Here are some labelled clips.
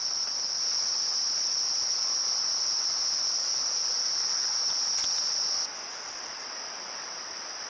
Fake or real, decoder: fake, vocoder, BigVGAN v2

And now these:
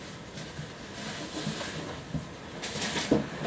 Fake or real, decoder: real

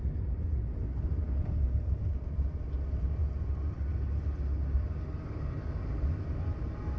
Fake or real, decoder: real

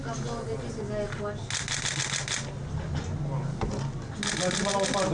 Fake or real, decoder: real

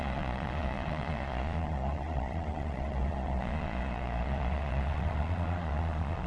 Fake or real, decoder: fake, vocoder, Vocos